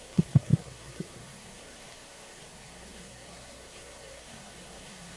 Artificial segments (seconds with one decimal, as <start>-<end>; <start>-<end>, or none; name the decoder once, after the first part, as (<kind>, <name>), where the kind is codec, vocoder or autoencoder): 0.0-5.2 (codec, SNAC)